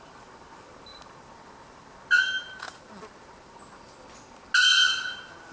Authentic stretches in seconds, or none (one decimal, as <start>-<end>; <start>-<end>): 0.0-5.5